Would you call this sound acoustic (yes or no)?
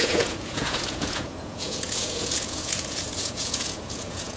no